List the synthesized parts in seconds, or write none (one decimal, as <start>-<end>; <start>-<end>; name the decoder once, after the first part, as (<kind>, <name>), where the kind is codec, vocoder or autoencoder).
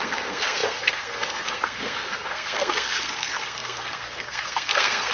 0.0-5.1 (codec, SNAC)